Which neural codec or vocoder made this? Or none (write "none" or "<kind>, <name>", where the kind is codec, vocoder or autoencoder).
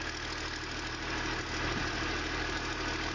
none